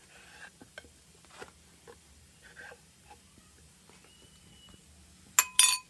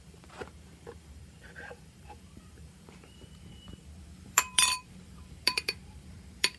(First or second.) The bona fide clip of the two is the first